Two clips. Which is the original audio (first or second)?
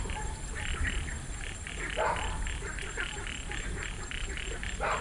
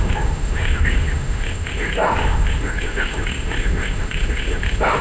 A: first